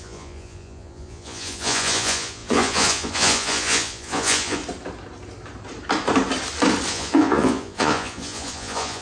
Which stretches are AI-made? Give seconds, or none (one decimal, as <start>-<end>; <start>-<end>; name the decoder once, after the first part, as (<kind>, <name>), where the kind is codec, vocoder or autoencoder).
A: 0.0-4.6 (vocoder, Vocos); 6.9-9.0